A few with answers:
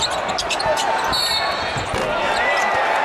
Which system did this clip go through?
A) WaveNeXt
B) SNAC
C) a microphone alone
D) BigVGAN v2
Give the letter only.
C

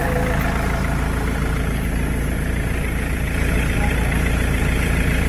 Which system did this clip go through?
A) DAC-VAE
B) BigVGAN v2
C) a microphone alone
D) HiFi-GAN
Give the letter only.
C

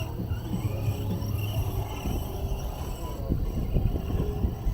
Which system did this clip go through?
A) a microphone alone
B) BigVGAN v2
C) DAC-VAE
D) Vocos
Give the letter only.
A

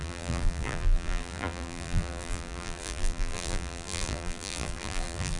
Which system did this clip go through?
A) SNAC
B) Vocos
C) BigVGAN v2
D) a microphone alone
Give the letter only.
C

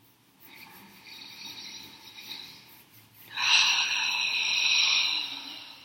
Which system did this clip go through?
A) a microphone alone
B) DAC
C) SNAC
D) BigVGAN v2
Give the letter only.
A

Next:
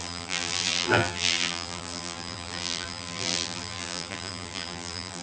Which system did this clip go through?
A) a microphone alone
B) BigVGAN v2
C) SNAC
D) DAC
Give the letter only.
B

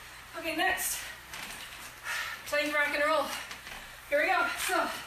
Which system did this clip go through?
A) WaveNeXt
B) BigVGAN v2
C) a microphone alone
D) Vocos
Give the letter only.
B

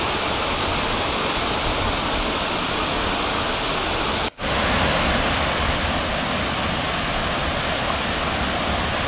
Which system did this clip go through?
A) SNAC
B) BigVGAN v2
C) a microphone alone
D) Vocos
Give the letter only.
C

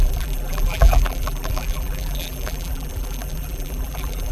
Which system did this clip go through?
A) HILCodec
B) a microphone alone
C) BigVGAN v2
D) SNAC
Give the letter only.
C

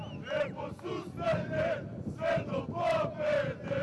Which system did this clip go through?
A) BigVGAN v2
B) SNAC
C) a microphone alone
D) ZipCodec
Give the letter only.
C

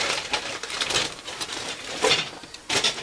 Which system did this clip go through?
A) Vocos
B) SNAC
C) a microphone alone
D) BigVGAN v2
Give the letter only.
D